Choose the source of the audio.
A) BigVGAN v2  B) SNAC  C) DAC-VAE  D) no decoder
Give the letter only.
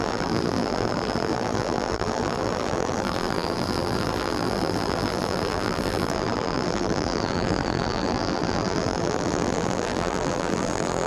A